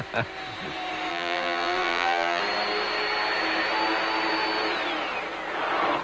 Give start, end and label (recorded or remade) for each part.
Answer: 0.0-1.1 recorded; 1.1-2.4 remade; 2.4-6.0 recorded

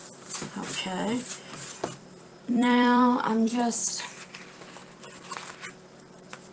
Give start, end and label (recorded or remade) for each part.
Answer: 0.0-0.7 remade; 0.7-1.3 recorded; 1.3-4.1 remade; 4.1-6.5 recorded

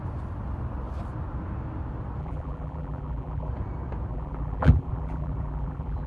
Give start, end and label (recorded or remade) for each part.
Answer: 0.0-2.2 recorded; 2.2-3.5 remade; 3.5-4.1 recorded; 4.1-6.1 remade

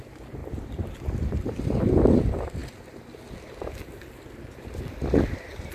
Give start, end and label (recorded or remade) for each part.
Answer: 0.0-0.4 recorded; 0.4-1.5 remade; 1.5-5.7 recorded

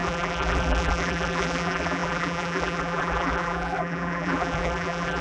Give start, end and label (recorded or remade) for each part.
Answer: 0.0-5.2 remade